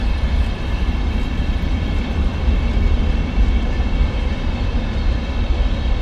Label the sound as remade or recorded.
remade